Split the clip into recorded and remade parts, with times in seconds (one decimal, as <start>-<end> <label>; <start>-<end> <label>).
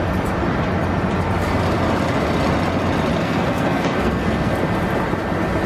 0.0-3.2 recorded; 3.2-4.5 remade; 4.5-5.7 recorded